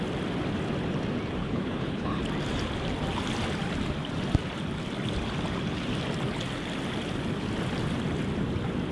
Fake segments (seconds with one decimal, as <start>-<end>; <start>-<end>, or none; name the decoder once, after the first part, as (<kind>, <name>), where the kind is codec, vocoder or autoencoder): 1.4-2.2 (codec, HILCodec)